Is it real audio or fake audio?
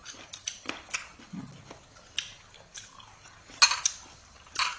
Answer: real